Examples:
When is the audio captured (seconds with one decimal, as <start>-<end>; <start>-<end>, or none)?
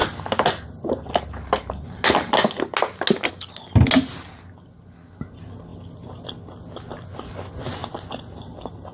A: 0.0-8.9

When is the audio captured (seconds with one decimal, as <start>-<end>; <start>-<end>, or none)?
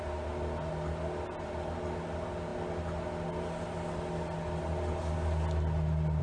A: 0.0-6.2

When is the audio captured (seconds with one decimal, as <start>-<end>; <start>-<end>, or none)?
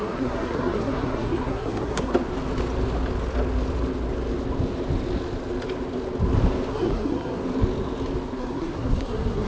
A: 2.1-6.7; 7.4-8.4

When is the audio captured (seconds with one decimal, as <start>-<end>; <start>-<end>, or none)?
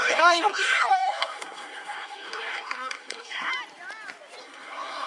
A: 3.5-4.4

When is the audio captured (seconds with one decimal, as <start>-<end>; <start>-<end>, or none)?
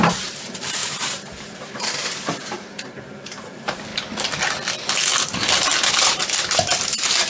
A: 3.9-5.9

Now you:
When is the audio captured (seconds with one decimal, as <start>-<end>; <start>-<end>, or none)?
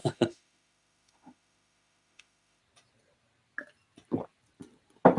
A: 2.6-5.2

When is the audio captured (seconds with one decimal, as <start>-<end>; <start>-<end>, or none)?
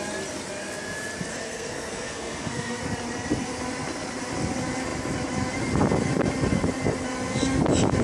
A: 0.0-1.3; 2.8-8.0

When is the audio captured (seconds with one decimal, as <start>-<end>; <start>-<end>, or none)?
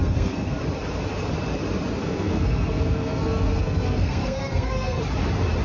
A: 0.6-2.0; 5.0-5.6